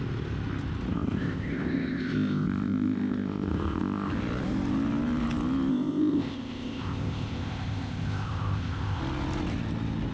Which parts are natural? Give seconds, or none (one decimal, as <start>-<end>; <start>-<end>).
0.0-0.9; 4.1-5.7; 9.0-10.1